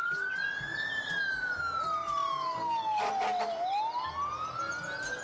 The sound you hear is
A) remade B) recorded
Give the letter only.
B